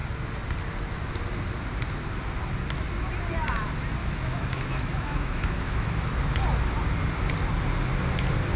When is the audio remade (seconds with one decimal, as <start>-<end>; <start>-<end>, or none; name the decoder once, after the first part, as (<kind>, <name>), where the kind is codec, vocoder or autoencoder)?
4.0-6.0 (autoencoder, DAC-VAE)